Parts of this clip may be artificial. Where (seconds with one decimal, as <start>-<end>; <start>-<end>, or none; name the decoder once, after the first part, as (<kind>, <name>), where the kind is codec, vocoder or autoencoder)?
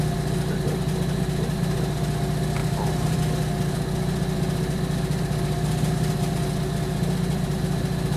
2.6-3.2 (vocoder, BigVGAN v2)